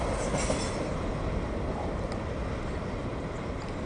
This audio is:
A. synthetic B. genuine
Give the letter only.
B